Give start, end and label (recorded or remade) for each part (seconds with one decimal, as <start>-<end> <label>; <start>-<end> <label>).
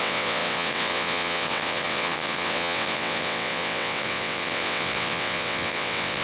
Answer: 0.0-6.2 remade